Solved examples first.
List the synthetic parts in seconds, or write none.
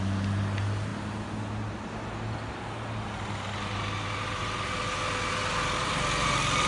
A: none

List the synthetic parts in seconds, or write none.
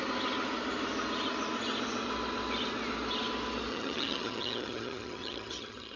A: 3.7-6.0 (vocoder, HiFi-GAN)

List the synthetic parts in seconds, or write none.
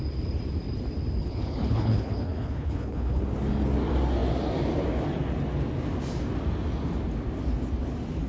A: 1.2-3.2 (codec, HILCodec)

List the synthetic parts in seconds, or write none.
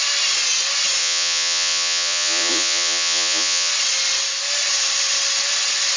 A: 1.0-3.7 (vocoder, Vocos)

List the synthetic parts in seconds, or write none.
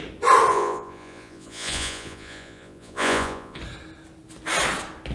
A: 0.5-3.6 (vocoder, Vocos)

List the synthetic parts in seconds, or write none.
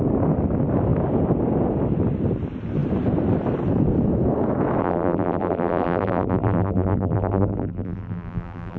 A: 4.8-8.8 (vocoder, BigVGAN v2)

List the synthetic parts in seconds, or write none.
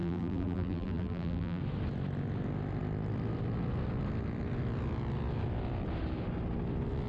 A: 0.0-1.6 (vocoder, BigVGAN v2)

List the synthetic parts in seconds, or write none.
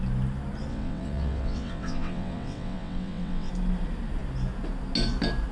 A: 0.7-3.5 (vocoder, WaveNeXt)